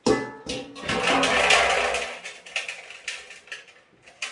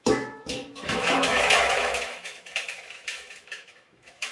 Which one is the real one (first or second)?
first